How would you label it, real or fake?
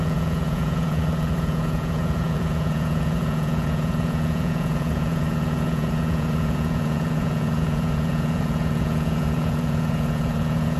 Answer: fake